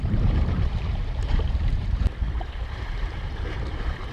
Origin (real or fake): fake